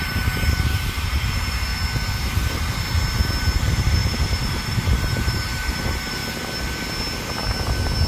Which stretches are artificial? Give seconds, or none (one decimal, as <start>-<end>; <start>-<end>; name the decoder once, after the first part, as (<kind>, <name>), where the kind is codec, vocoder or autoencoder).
0.0-1.7 (vocoder, BigVGAN v2); 3.6-6.2